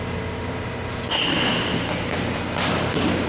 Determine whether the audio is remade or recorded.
recorded